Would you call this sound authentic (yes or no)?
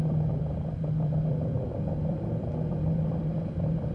no